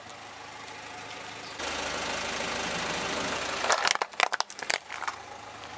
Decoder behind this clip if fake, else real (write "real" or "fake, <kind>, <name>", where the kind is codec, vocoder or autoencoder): real